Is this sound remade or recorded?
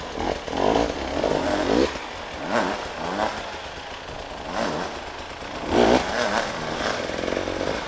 recorded